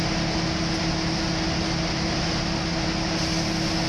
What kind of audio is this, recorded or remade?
recorded